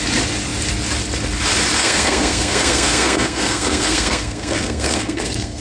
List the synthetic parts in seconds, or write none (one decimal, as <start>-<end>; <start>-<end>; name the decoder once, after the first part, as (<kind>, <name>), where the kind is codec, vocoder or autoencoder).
1.8-5.6 (codec, SNAC)

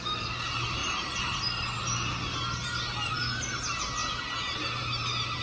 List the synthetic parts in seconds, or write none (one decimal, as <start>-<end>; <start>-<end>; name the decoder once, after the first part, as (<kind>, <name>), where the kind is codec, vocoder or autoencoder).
none

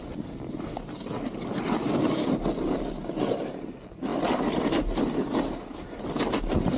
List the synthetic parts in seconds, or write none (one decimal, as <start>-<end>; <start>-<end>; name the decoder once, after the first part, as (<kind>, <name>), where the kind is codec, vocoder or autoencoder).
none

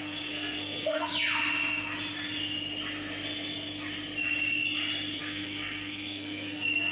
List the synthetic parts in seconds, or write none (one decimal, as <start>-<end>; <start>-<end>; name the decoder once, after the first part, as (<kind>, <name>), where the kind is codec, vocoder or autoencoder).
0.0-1.1 (codec, SNAC); 5.2-6.9

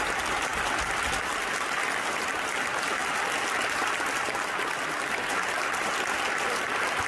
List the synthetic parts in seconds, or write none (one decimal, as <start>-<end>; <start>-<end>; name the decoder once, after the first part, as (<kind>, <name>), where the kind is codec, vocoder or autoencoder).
none

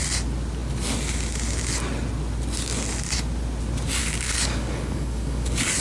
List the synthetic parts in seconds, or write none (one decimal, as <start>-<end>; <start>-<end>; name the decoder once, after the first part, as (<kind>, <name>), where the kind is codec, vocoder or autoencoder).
4.0-5.8 (codec, DAC)

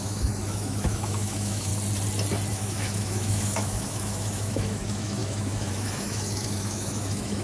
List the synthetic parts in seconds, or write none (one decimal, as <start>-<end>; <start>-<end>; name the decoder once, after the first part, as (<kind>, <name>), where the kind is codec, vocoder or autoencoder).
0.0-1.7 (autoencoder, DAC-VAE); 2.5-7.4

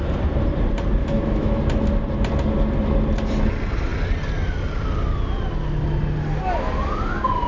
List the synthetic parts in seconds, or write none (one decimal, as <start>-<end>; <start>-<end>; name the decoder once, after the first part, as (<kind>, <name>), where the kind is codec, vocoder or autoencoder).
1.0-1.6 (autoencoder, DAC-VAE)